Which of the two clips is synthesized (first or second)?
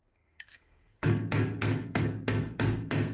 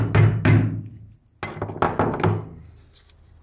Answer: first